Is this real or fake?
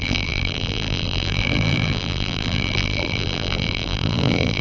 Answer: fake